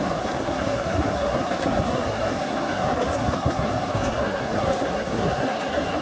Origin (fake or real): fake